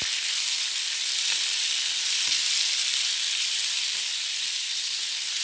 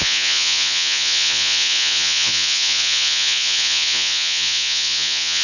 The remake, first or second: second